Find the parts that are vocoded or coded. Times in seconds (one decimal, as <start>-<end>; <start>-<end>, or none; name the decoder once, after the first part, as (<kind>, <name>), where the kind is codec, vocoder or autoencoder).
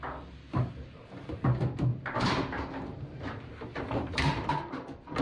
1.9-5.2 (vocoder, BigVGAN v2)